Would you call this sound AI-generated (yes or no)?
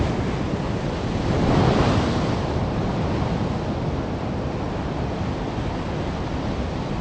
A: no